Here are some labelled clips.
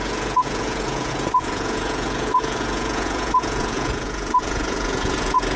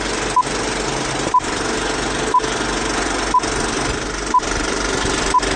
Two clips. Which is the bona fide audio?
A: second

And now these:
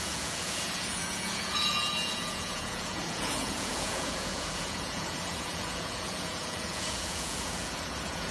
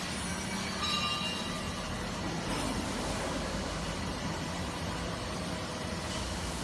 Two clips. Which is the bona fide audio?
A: second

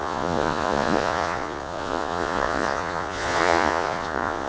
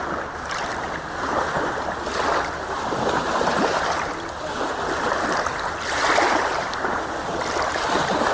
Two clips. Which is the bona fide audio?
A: second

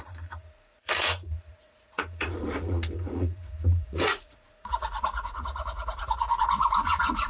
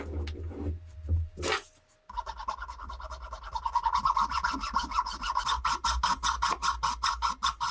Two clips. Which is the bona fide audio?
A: second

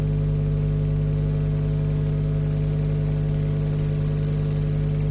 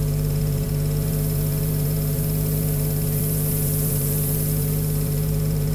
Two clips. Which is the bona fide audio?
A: first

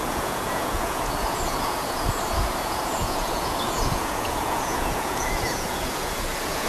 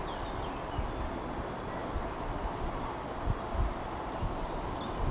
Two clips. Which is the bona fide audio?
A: second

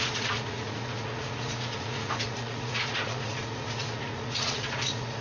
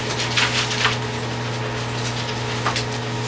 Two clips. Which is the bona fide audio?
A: second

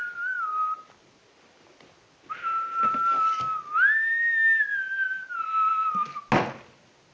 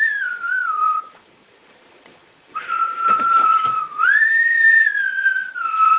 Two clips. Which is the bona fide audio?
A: first